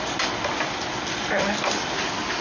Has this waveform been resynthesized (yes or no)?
no